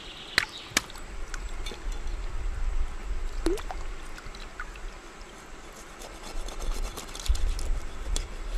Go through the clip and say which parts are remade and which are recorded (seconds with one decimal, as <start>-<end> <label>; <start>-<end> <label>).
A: 0.0-4.5 recorded; 4.5-6.7 remade; 6.7-8.6 recorded